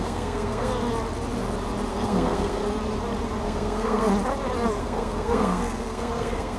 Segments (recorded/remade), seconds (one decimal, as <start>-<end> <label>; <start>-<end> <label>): 0.0-0.7 remade; 0.7-1.9 recorded; 1.9-2.6 remade; 2.6-3.4 recorded; 3.4-4.1 remade; 4.1-4.8 recorded; 4.8-6.6 remade